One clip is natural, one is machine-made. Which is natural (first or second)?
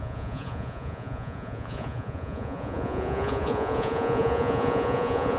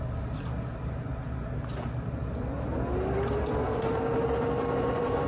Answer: second